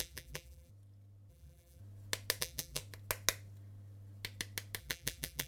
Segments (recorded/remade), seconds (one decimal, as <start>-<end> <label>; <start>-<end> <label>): 0.0-0.7 remade; 0.7-1.3 recorded; 1.3-1.8 remade; 1.8-2.4 recorded; 2.4-2.8 remade; 2.8-4.8 recorded; 4.8-5.5 remade